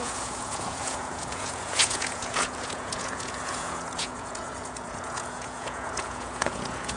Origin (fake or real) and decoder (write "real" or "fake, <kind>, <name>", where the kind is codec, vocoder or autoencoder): fake, vocoder, Vocos